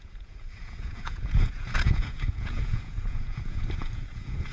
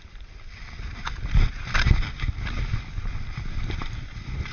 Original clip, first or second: second